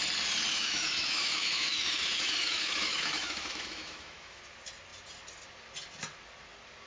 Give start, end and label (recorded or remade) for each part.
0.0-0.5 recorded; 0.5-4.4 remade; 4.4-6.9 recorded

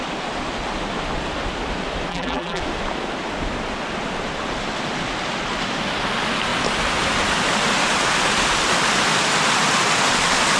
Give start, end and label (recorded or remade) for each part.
0.0-2.1 recorded; 2.1-2.6 remade; 2.6-10.6 recorded

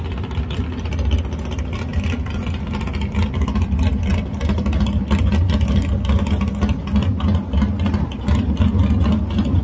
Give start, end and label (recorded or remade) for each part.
0.0-9.6 recorded